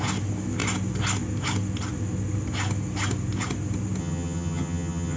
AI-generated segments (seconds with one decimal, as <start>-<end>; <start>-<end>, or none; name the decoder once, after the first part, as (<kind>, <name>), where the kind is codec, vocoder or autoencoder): 4.0-5.2 (vocoder, HiFi-GAN)